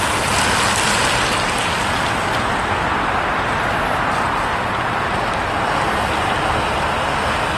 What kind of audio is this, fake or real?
real